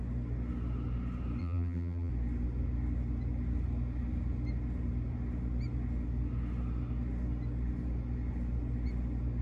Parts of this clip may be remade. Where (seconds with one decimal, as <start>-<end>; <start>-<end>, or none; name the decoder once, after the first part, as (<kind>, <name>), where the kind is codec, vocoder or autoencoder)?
1.4-2.1 (vocoder, BigVGAN v2)